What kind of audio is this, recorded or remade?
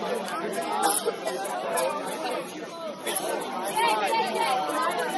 recorded